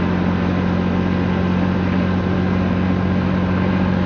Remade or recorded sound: recorded